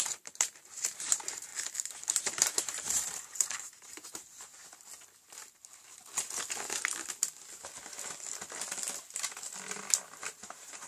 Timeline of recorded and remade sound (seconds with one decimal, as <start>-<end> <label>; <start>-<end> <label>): 0.0-1.5 remade; 1.5-2.1 recorded; 2.1-4.6 remade; 4.6-9.7 recorded; 9.7-10.9 remade